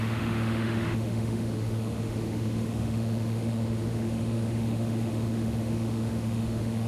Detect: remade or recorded remade